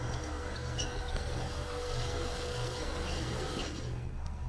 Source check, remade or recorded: remade